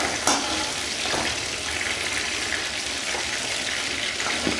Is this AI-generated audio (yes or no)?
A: no